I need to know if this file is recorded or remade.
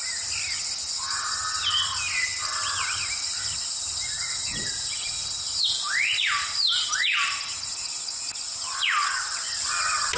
recorded